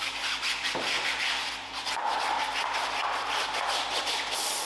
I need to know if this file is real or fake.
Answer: real